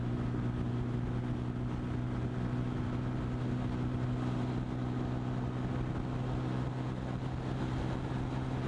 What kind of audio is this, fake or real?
real